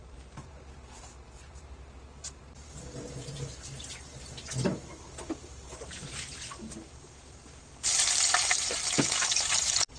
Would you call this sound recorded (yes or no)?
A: no